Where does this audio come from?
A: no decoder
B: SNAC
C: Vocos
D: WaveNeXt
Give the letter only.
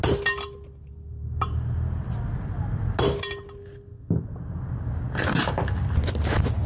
A